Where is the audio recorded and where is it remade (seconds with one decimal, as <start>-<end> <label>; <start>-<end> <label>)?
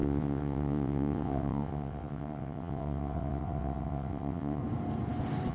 0.0-4.6 remade; 4.6-5.5 recorded